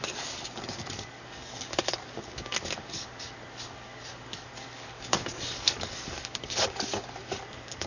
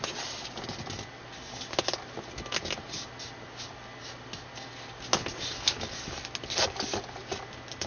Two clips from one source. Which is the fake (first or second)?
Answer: first